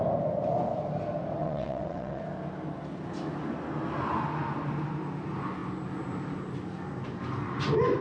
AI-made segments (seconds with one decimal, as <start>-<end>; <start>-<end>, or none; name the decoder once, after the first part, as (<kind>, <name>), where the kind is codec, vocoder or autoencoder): 1.4-2.2 (vocoder, WaveNeXt)